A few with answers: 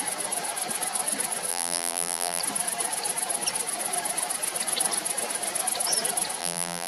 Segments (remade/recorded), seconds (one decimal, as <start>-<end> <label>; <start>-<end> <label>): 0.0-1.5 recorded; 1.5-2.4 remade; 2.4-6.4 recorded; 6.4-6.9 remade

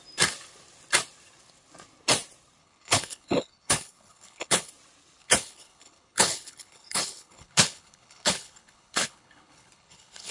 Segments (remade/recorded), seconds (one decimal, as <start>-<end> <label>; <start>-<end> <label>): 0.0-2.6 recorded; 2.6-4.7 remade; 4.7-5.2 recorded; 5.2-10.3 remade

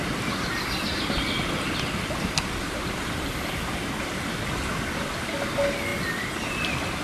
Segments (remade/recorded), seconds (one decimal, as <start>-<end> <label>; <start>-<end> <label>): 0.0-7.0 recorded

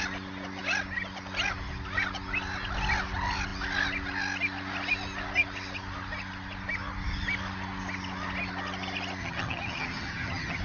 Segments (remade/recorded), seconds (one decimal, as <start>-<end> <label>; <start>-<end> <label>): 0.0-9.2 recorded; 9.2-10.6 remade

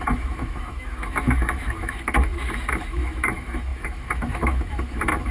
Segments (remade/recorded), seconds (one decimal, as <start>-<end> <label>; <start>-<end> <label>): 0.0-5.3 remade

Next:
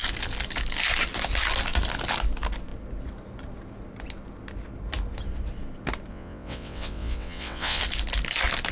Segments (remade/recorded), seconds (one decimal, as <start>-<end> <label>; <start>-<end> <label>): 0.0-6.1 recorded; 6.1-7.8 remade; 7.8-8.7 recorded